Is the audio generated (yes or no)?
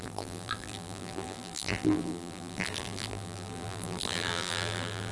yes